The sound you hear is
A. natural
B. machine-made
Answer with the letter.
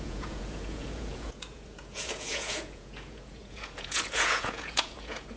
B